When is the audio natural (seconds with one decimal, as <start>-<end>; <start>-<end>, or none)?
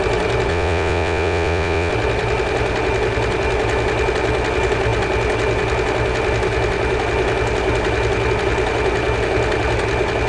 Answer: 0.0-0.5; 1.9-10.3